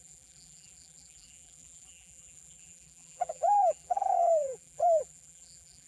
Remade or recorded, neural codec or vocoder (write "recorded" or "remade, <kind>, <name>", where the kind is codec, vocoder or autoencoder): remade, vocoder, BigVGAN v2